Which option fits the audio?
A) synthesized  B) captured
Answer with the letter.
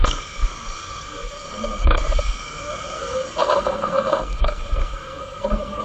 A